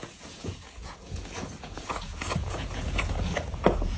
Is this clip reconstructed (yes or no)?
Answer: yes